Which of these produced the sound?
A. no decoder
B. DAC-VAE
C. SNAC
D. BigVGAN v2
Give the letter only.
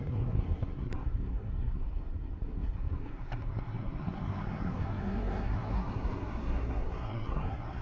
C